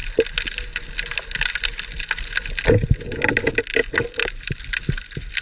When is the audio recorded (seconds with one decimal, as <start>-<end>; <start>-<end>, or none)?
0.0-5.4